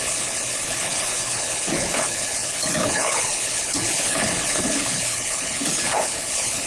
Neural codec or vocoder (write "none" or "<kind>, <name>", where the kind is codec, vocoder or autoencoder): codec, HILCodec